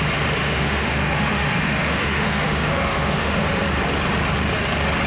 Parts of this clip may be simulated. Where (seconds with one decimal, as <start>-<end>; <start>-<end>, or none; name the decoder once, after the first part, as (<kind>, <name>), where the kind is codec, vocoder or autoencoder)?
0.4-3.5 (autoencoder, DAC-VAE)